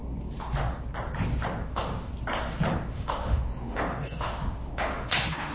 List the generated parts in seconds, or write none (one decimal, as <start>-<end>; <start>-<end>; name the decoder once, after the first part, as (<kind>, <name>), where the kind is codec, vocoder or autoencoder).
1.6-2.1 (autoencoder, DAC-VAE); 2.9-5.5